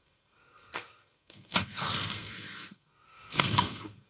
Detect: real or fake fake